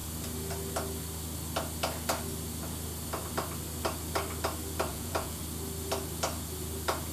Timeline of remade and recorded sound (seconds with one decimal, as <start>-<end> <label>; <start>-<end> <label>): 0.0-4.9 recorded; 4.9-5.4 remade; 5.4-7.1 recorded